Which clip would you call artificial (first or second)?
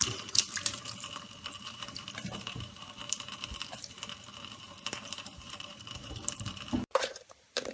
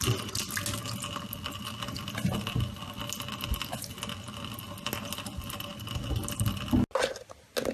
first